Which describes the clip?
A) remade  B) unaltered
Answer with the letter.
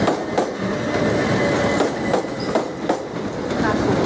B